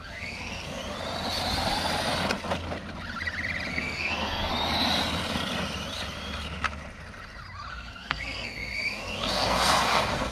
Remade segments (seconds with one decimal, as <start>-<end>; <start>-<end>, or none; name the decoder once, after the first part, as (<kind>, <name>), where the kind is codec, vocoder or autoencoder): 0.0-0.8 (codec, SNAC); 3.7-4.5; 7.7-10.3